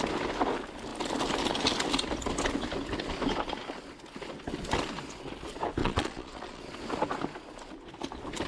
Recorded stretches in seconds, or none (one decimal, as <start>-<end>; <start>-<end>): 0.0-5.8; 6.6-8.5